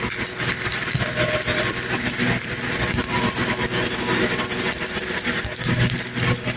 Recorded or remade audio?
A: recorded